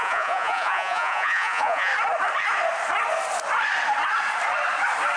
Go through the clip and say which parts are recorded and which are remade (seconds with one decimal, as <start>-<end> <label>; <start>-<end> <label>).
0.0-1.9 remade; 1.9-5.2 recorded